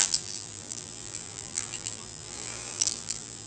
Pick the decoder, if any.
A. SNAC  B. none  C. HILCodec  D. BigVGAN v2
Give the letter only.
D